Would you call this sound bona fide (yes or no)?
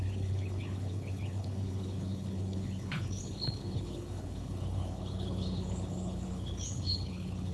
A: no